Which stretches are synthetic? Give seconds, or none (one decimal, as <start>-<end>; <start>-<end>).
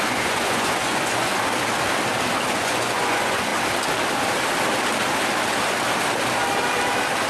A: 0.0-1.3; 2.5-3.5